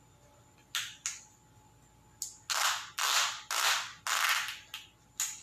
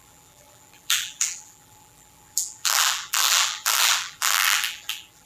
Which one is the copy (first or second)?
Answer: second